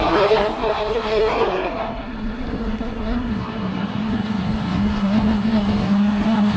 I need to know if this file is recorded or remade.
remade